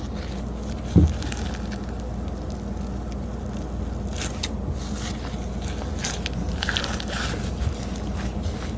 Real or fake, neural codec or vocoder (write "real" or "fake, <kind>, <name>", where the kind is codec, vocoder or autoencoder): real